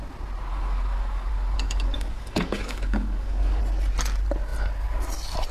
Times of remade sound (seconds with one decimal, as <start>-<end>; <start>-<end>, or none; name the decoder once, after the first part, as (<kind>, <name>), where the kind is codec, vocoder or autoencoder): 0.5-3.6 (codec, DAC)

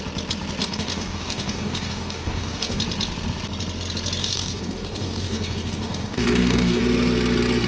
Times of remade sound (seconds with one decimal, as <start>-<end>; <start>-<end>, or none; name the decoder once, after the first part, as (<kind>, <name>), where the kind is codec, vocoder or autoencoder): 0.6-2.8 (codec, DAC); 4.2-6.8

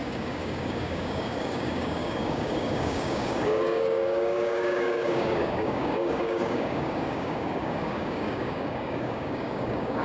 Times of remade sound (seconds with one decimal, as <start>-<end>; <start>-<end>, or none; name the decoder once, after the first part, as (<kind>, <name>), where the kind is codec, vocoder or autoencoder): 0.0-10.0 (codec, DAC)